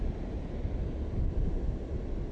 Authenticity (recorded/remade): recorded